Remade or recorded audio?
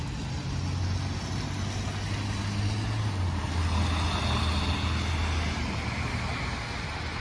recorded